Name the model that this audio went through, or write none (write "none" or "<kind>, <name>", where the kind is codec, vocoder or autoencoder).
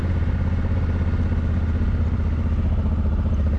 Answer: none